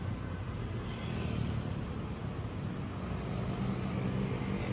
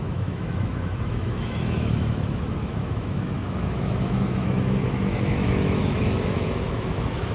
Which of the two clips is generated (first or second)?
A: second